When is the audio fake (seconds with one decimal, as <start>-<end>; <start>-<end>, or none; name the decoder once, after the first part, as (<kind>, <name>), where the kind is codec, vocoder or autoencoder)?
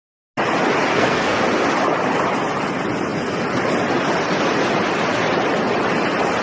0.9-1.4 (codec, SNAC)